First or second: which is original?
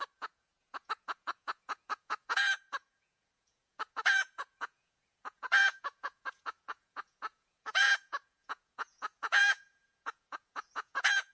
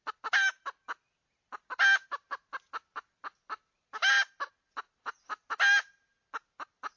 second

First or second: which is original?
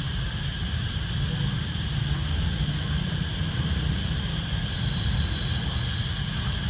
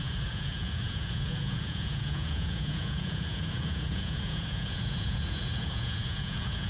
first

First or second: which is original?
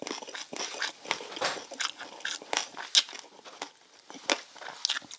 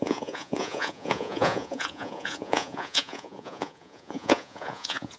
first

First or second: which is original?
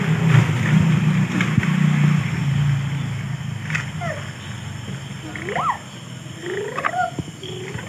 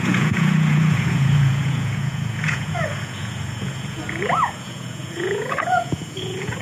first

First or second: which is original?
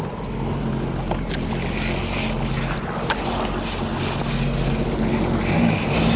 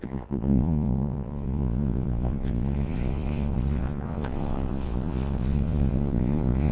first